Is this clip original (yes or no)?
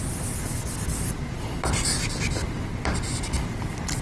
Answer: yes